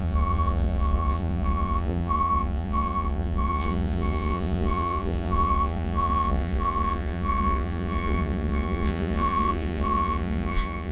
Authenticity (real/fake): fake